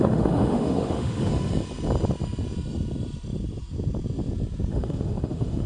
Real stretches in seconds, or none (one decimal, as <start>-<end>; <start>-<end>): 1.3-4.7